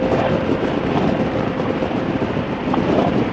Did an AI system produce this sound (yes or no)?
no